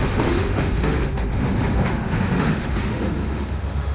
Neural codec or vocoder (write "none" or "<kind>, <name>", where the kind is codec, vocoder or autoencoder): autoencoder, DAC-VAE